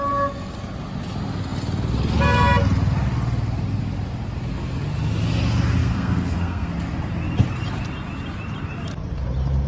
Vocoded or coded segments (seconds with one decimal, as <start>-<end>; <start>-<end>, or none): 5.8-6.7